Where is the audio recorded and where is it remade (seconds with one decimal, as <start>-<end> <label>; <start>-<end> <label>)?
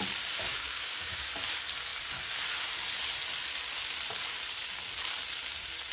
0.0-0.5 recorded; 0.5-1.3 remade; 1.3-5.9 recorded